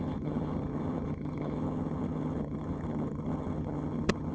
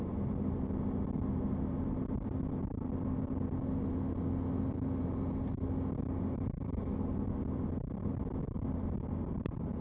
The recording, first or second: second